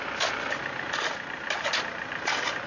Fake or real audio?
real